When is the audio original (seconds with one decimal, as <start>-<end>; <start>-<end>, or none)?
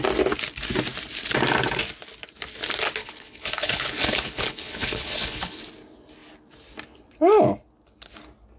0.0-3.0; 5.6-8.6